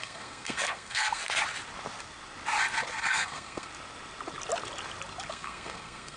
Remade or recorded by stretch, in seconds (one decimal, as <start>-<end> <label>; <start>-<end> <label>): 0.0-1.2 remade; 1.2-3.0 recorded; 3.0-3.7 remade; 3.7-5.3 recorded; 5.3-6.2 remade